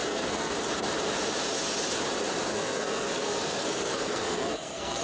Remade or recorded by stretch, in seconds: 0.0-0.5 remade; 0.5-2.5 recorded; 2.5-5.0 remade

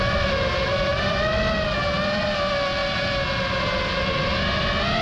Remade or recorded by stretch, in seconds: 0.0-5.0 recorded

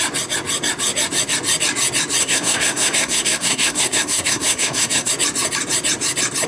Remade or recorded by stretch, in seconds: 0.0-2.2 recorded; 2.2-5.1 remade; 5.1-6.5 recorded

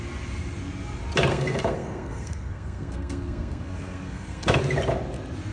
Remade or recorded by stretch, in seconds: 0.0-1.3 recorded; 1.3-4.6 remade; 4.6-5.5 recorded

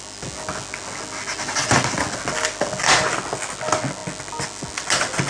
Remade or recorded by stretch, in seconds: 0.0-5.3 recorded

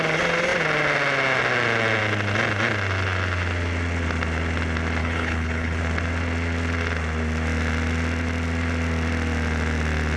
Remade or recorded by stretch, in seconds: 0.0-5.0 recorded; 5.0-5.8 remade; 5.8-10.2 recorded